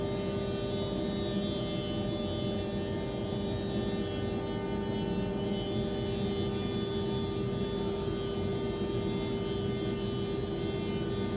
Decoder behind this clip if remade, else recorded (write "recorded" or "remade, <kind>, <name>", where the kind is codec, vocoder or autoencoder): recorded